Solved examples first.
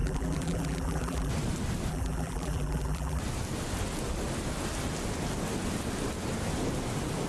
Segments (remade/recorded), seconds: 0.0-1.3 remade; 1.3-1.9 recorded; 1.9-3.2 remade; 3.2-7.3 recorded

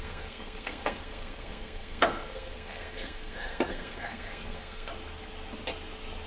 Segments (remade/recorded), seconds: 0.0-4.9 remade; 4.9-6.3 recorded

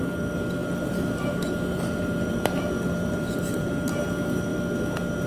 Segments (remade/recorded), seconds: 0.0-0.6 recorded; 0.6-3.7 remade; 3.7-5.3 recorded

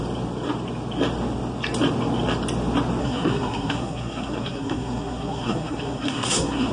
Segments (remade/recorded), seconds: 0.0-3.0 recorded; 3.0-6.7 remade

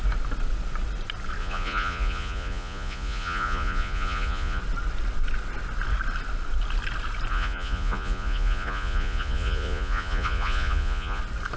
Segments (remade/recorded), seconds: 0.0-1.4 recorded; 1.4-4.6 remade; 4.6-7.3 recorded; 7.3-11.2 remade; 11.2-11.6 recorded

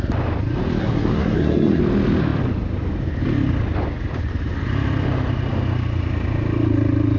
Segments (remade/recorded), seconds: 0.0-0.8 recorded; 0.8-1.8 remade; 1.8-7.2 recorded